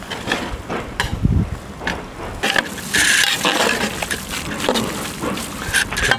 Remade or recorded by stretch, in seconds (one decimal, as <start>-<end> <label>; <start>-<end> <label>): 0.0-6.2 recorded